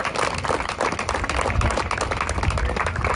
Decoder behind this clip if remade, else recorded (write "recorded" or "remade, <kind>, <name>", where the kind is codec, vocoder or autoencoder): recorded